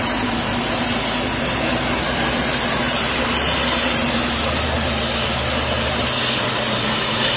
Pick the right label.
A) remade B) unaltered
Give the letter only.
B